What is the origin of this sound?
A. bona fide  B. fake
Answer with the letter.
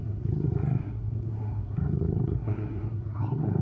B